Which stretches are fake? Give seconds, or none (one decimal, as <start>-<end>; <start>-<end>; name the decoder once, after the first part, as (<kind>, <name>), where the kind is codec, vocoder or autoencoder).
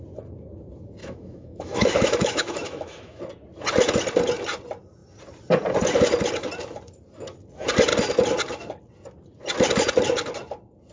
1.0-3.2 (autoencoder, DAC-VAE)